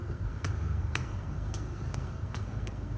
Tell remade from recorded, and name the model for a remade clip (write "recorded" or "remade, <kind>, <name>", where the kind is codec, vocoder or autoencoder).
remade, codec, SNAC